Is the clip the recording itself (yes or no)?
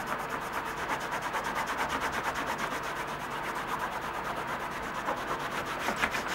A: yes